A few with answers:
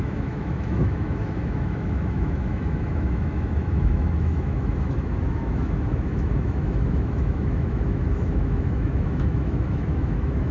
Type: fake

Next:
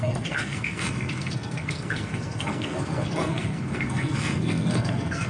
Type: fake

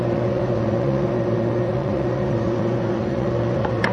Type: fake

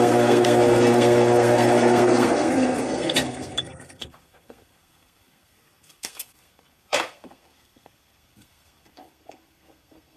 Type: fake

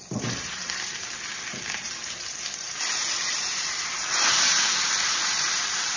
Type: fake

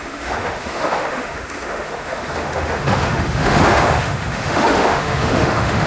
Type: fake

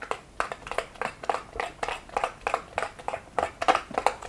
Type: real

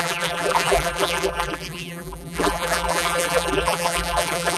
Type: fake